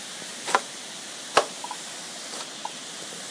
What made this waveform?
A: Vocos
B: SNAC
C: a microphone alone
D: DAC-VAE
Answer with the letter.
C